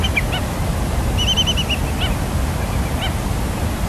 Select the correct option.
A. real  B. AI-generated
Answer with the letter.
A